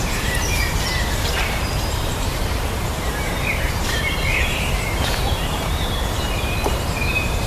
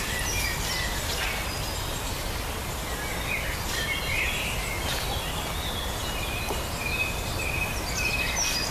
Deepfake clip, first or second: first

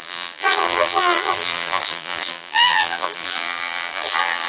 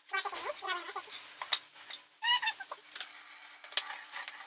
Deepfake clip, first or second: first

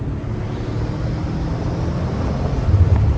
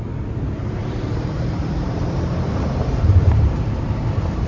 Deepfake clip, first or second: second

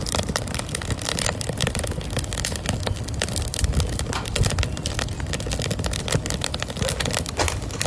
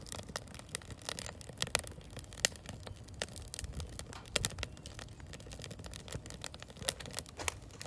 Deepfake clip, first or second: first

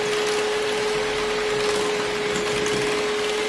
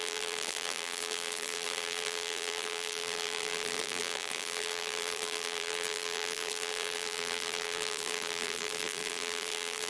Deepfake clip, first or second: second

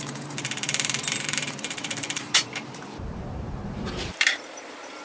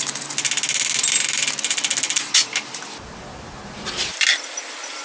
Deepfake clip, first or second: first